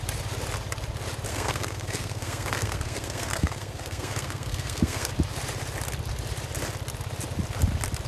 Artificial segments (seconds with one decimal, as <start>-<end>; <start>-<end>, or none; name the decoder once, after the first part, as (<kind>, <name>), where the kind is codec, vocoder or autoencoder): 1.3-5.1 (codec, SNAC)